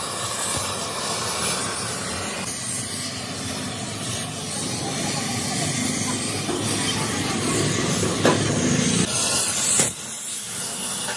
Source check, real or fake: real